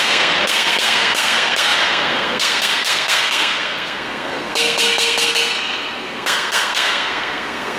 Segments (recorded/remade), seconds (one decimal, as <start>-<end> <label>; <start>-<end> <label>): 0.0-7.8 remade